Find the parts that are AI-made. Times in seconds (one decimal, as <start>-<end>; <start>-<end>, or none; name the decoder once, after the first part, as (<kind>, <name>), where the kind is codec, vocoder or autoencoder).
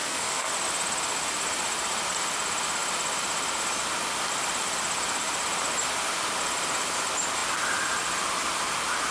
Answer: 0.0-0.5 (codec, SNAC)